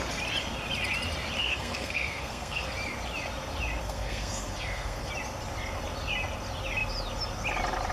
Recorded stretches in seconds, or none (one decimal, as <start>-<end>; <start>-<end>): 0.0-1.4; 2.7-3.8; 5.1-7.9